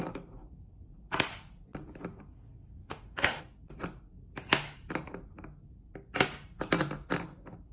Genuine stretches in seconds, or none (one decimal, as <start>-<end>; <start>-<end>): 0.0-2.8; 3.4-7.7